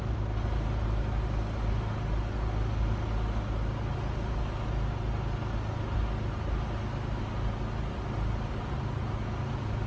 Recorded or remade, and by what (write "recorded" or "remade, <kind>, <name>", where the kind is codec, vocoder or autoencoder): recorded